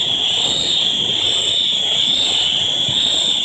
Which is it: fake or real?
fake